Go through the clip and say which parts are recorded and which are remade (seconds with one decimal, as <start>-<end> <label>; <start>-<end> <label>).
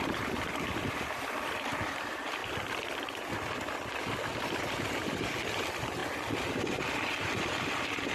0.0-2.4 remade; 2.4-4.7 recorded; 4.7-6.0 remade; 6.0-6.8 recorded; 6.8-8.1 remade